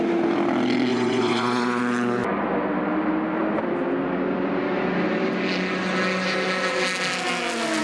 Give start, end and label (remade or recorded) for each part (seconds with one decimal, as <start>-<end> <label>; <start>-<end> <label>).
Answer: 0.0-0.9 recorded; 0.9-1.8 remade; 1.8-7.8 recorded